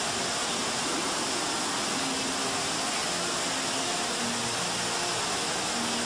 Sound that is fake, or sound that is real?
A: real